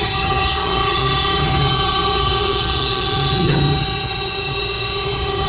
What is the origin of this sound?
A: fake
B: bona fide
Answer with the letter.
A